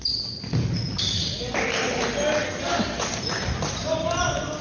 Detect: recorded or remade recorded